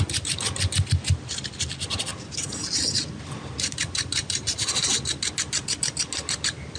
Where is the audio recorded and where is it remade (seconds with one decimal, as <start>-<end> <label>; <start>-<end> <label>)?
0.0-6.8 recorded